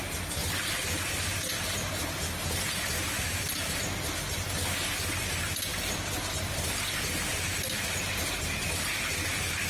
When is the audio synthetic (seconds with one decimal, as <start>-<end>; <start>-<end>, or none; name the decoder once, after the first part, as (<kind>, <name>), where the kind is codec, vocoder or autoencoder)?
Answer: none